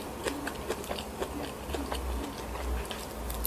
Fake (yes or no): no